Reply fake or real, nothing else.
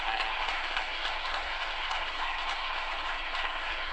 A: fake